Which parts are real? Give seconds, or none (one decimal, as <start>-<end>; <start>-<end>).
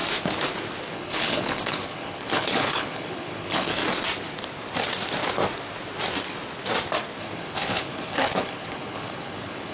0.0-0.9; 3.8-7.2